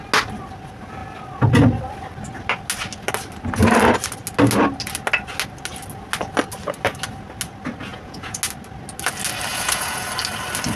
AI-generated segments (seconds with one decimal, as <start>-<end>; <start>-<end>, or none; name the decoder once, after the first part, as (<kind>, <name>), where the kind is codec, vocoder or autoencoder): 7.9-8.4 (vocoder, Vocos); 9.5-10.1